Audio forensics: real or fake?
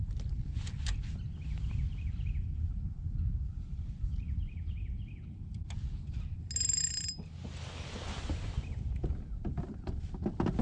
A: real